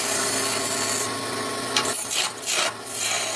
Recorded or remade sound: recorded